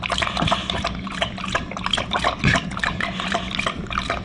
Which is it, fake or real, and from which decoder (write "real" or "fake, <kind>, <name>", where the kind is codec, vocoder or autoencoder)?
real